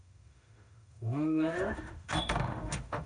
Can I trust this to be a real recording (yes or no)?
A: no